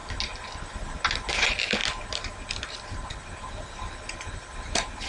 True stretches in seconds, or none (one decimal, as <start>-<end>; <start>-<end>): 0.0-5.1